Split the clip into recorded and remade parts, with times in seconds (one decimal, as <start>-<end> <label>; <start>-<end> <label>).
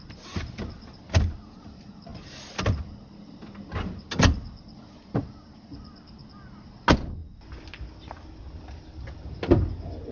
0.0-10.1 recorded